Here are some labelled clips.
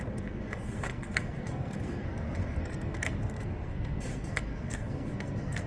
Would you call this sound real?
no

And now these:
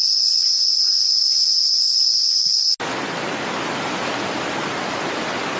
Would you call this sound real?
yes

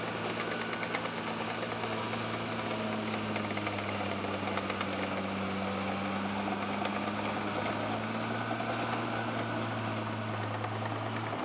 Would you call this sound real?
yes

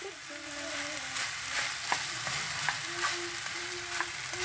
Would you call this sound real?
yes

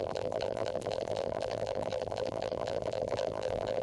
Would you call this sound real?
no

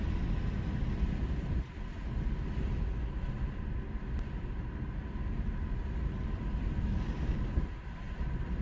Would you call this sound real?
yes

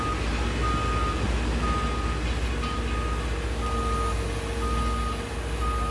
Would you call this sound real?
yes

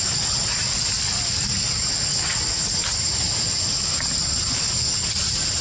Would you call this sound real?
yes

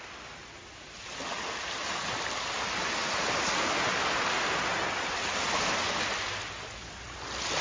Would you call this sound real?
yes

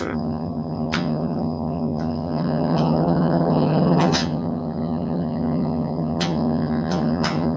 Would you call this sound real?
no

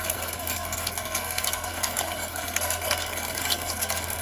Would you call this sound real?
no